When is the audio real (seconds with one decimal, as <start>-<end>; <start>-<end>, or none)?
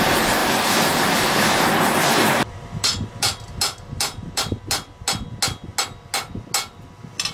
0.0-0.4; 4.6-7.3